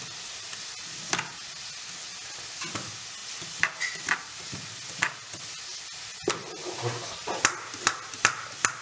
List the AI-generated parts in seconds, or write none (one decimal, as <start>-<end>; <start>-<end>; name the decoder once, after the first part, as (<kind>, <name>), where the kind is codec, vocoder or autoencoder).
none